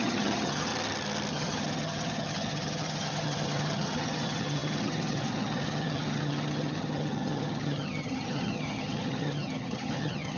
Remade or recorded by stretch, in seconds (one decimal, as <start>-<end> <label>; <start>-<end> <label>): 0.0-0.7 remade; 0.7-1.3 recorded; 1.3-10.4 remade